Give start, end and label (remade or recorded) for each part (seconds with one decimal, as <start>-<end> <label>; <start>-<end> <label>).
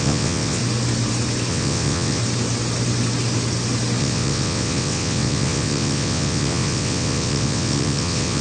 0.0-0.6 remade; 0.6-1.5 recorded; 1.5-2.2 remade; 2.2-4.0 recorded; 4.0-8.4 remade